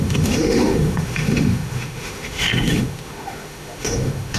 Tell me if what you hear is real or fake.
fake